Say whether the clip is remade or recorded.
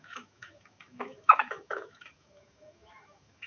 remade